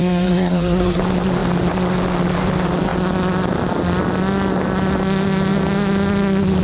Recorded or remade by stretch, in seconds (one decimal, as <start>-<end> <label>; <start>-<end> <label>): 0.0-1.0 remade; 1.0-6.6 recorded